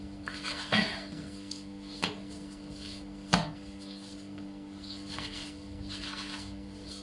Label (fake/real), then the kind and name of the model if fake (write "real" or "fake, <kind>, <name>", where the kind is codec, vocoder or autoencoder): fake, codec, SNAC